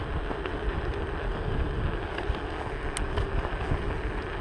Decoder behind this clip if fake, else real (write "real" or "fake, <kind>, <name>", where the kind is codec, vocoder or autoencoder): real